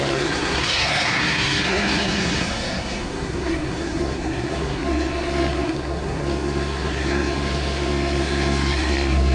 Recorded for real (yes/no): no